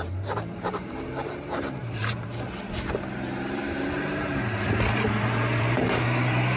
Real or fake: fake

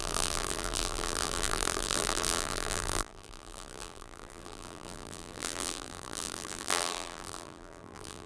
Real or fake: fake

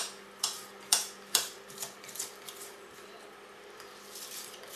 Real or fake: fake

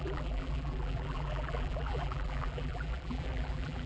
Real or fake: fake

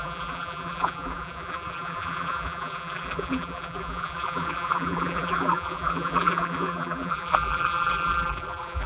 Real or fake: fake